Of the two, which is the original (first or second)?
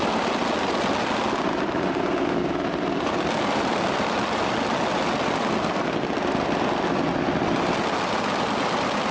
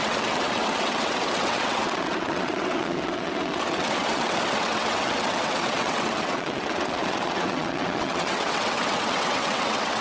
first